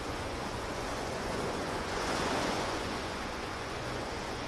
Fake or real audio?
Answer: fake